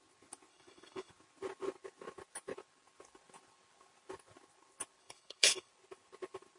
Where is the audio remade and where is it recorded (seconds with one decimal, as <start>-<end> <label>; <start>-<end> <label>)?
0.0-0.5 recorded; 0.5-1.1 remade; 1.1-5.0 recorded; 5.0-5.7 remade; 5.7-6.6 recorded